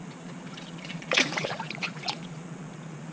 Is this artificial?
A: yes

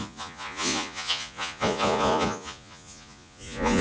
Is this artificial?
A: yes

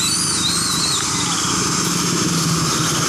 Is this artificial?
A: no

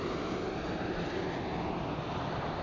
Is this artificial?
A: no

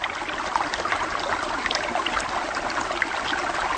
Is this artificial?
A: no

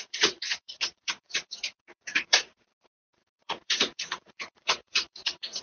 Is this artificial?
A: yes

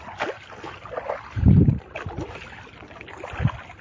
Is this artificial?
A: no